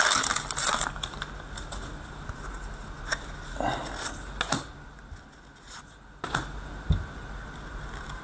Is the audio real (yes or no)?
yes